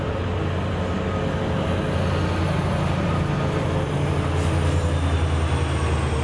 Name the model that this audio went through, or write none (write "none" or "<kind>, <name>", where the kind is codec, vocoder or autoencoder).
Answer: none